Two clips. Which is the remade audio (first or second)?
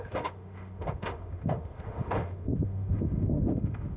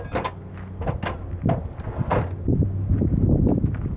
first